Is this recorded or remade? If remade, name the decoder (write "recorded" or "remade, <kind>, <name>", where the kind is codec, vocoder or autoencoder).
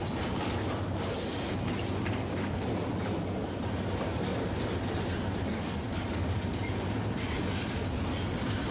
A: recorded